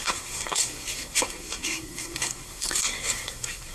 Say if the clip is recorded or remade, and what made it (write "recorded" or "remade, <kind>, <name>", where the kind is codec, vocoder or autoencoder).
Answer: remade, codec, SNAC